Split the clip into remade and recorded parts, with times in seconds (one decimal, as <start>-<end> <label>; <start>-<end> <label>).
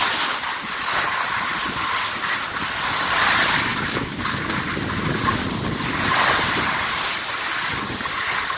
0.0-3.7 recorded; 3.7-4.6 remade; 4.6-8.6 recorded